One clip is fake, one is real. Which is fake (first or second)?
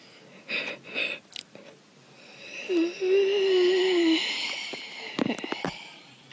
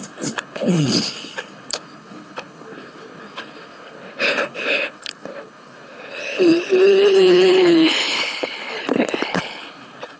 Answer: second